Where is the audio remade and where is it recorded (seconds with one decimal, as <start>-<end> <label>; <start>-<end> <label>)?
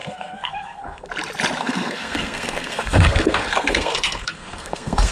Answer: 0.0-1.1 remade; 1.1-1.6 recorded; 1.6-5.1 remade